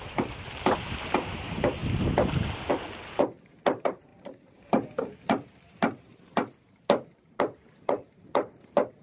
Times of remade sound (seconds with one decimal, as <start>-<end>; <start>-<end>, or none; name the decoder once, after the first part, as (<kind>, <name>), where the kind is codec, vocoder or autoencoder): 0.0-1.8 (vocoder, BigVGAN v2); 3.5-9.0